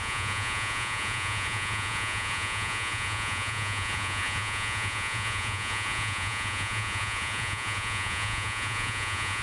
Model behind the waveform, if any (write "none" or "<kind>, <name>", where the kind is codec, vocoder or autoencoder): vocoder, Vocos